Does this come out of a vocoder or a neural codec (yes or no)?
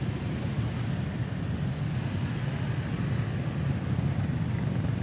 no